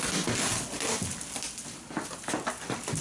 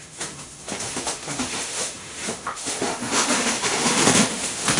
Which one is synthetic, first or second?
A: second